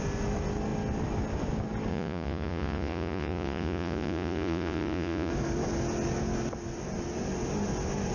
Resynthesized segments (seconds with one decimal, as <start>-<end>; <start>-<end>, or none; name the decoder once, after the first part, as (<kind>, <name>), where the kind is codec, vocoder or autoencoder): 1.9-5.3 (vocoder, Vocos)